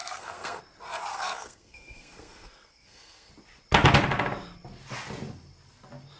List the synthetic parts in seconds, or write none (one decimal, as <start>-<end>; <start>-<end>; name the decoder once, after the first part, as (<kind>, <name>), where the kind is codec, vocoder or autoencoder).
0.0-0.6 (codec, SNAC); 1.1-3.3